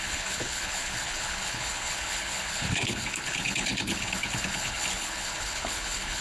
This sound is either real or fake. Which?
fake